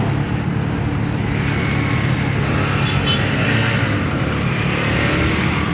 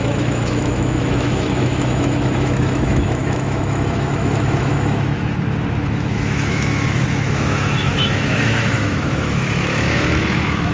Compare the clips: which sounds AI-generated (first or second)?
second